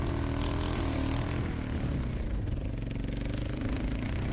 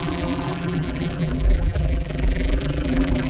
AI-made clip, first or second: second